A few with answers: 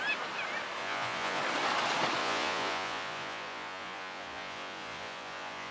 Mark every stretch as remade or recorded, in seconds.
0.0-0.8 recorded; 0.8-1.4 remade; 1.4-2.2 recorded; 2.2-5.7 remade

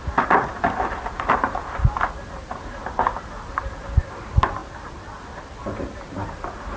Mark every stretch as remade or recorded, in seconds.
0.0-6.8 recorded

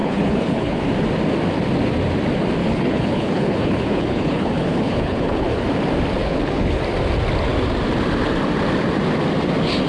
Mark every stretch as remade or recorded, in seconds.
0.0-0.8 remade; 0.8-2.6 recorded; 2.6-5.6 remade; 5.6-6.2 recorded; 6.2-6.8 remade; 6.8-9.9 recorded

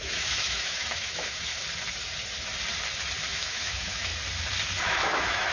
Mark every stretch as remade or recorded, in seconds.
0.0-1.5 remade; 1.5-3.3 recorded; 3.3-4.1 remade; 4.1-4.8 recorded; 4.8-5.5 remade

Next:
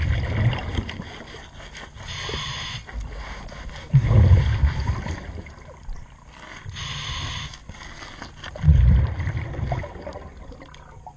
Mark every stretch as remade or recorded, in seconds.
0.0-11.2 recorded

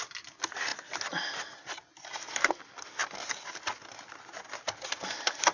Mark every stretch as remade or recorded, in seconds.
0.0-5.5 recorded

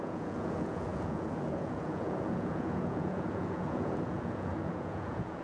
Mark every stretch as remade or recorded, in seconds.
0.0-5.4 remade